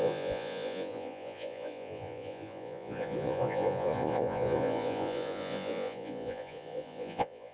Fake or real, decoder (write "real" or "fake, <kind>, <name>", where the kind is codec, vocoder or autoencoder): fake, vocoder, Vocos